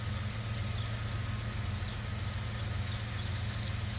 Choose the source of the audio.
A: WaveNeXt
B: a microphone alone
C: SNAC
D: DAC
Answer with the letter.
B